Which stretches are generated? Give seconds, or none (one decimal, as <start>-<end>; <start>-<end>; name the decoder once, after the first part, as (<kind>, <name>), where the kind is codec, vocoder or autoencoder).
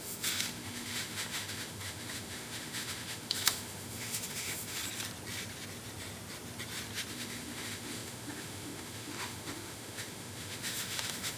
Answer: 0.0-4.8 (autoencoder, DAC-VAE); 7.1-11.4